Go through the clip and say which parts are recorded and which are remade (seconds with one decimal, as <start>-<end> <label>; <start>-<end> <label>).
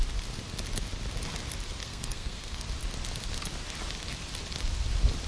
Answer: 0.0-1.8 recorded; 1.8-2.7 remade; 2.7-5.3 recorded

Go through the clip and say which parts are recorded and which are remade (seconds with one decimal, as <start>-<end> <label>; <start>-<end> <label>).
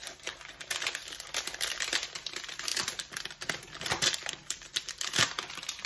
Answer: 0.0-5.9 remade